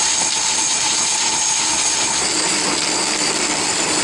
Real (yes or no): yes